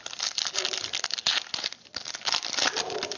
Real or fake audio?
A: real